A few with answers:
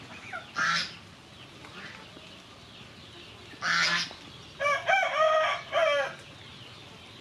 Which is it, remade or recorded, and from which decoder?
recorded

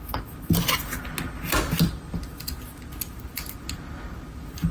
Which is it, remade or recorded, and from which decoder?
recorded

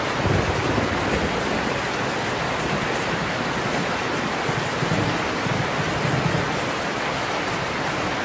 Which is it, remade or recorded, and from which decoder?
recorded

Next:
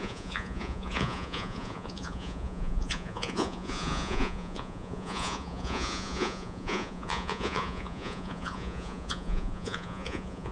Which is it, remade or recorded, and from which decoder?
remade, vocoder, Vocos